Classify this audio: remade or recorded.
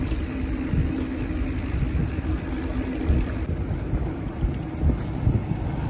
recorded